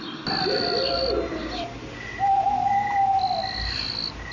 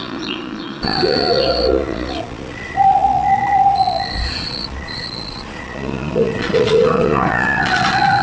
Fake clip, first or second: second